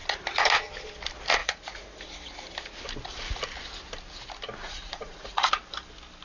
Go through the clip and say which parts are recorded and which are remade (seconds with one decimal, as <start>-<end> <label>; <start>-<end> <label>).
0.0-1.4 recorded; 1.4-2.0 remade; 2.0-4.6 recorded; 4.6-5.5 remade; 5.5-6.2 recorded